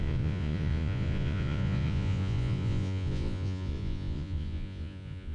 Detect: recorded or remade remade